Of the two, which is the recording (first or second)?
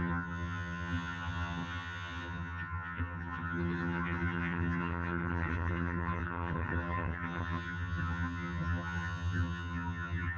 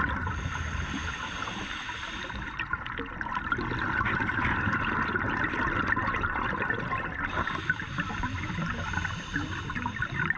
second